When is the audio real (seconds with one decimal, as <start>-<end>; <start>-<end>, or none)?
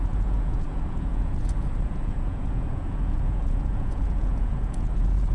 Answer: none